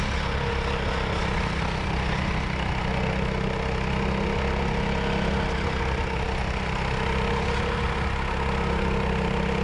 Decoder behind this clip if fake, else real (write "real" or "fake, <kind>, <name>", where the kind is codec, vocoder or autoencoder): real